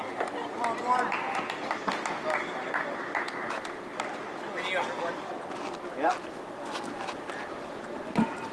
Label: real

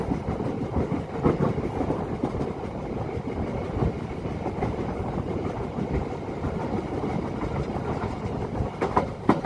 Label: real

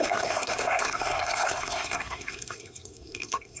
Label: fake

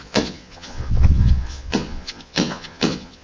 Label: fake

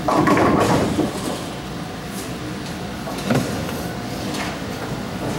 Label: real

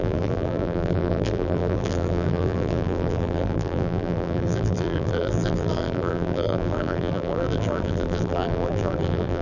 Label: fake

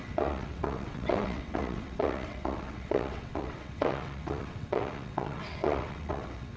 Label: fake